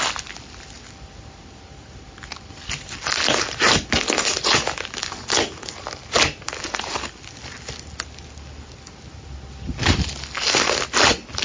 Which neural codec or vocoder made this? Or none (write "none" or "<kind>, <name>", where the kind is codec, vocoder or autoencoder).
none